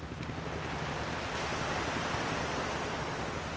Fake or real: real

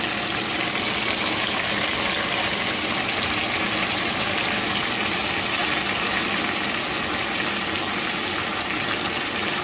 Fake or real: real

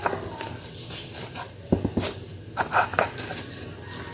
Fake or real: real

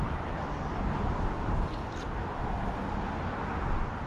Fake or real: real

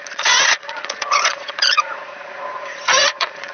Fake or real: fake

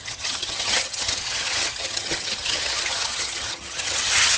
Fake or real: fake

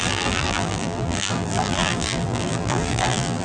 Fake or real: fake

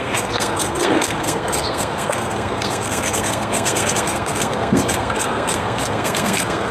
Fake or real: fake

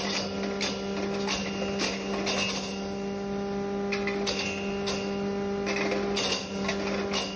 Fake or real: real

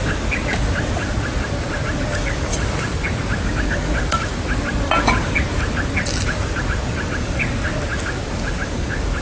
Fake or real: real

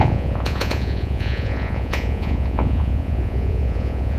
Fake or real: fake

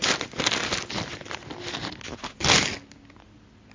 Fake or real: real